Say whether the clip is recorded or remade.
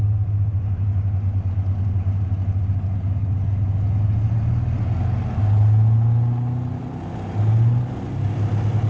recorded